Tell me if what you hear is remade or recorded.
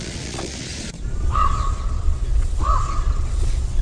remade